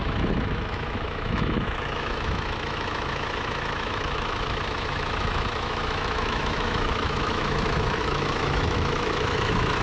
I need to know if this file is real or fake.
fake